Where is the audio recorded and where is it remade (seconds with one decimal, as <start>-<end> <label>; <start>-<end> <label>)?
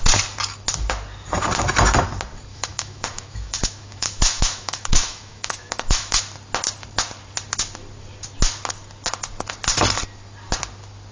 0.0-2.5 recorded; 2.5-6.2 remade; 6.2-11.1 recorded